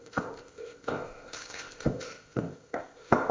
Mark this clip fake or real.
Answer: fake